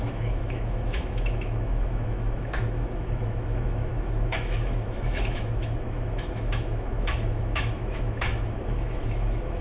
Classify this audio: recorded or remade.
remade